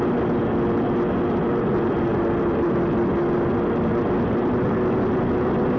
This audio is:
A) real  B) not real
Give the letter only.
A